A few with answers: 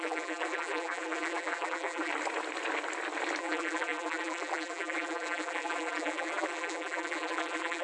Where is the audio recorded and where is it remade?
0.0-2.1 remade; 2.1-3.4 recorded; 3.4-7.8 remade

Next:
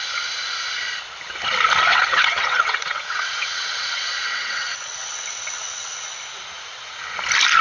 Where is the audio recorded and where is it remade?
0.0-1.9 recorded; 1.9-6.1 remade; 6.1-7.6 recorded

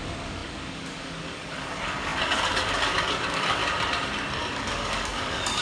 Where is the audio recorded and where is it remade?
0.0-3.6 remade; 3.6-4.4 recorded; 4.4-5.6 remade

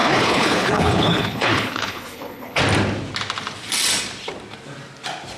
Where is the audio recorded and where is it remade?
0.0-2.6 remade; 2.6-5.4 recorded

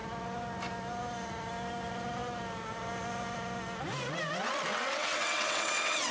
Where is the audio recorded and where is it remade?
0.0-4.7 recorded; 4.7-6.1 remade

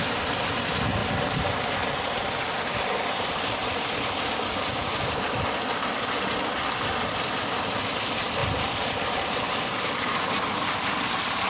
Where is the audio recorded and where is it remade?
0.0-11.5 recorded

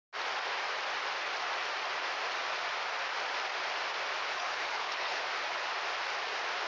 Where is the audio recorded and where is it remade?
0.0-4.2 recorded; 4.2-5.2 remade; 5.2-6.7 recorded